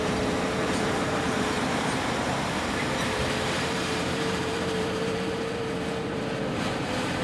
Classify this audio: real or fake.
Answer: fake